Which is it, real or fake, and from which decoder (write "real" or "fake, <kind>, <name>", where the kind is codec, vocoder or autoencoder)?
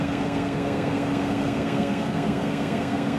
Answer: fake, codec, SNAC